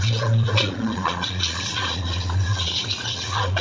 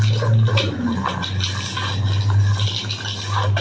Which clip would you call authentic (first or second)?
second